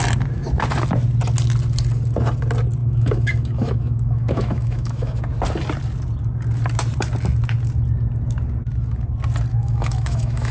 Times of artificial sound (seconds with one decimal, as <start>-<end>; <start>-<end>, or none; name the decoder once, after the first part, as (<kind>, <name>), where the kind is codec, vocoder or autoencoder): 2.8-5.2 (autoencoder, DAC-VAE); 9.5-10.5